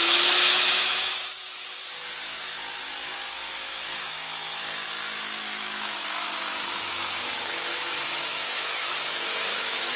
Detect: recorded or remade remade